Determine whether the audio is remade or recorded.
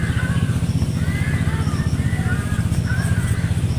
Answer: recorded